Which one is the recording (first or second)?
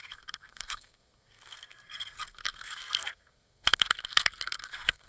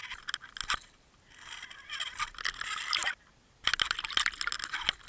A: second